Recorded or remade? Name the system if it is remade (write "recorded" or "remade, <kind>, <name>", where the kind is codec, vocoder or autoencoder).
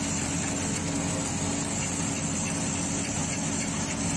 recorded